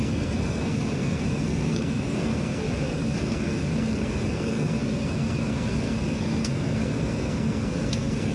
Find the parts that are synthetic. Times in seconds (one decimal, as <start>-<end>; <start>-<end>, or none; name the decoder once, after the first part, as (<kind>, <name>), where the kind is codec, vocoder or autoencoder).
0.0-8.3 (codec, SNAC)